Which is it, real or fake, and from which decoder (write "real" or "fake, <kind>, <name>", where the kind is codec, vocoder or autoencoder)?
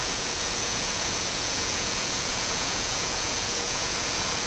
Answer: fake, vocoder, Vocos